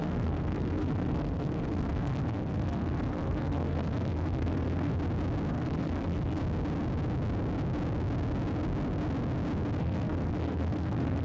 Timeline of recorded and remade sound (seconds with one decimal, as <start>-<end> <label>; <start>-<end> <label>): 0.0-4.9 remade; 4.9-5.5 recorded; 5.5-6.4 remade; 6.4-9.8 recorded; 9.8-11.2 remade